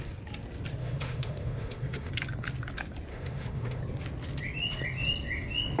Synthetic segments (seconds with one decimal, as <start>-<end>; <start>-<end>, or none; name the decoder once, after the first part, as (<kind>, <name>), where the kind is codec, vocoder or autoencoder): 0.8-2.1 (autoencoder, DAC-VAE); 3.1-3.8